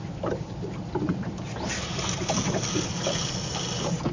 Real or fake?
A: real